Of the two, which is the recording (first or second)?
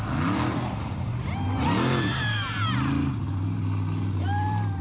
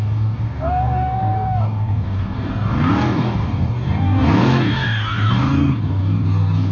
first